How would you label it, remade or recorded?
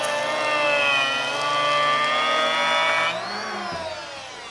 recorded